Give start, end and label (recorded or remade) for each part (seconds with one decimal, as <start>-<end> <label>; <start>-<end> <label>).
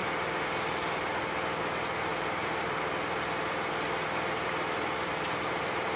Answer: 0.0-2.1 recorded; 2.1-6.0 remade